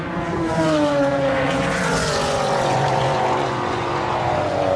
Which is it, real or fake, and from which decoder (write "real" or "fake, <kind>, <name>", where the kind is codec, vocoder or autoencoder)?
fake, vocoder, Vocos